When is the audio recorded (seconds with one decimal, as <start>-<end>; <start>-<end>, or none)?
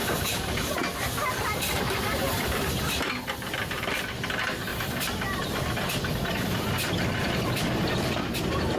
2.8-4.7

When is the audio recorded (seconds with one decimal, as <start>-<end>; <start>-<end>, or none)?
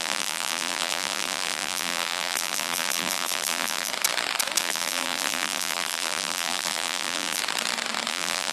3.9-4.6; 7.4-8.1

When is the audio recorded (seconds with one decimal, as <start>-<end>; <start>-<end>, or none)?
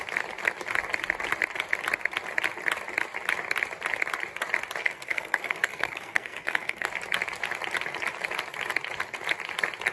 0.0-4.8; 6.9-9.9